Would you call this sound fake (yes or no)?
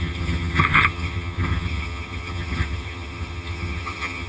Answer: yes